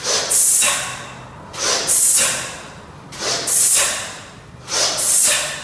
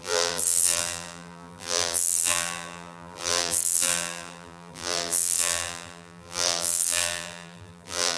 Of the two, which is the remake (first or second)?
second